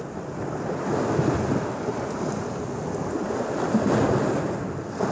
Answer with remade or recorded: recorded